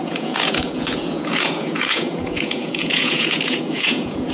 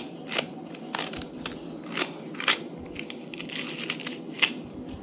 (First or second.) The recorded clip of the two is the second